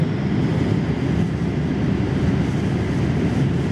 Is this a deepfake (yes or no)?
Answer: no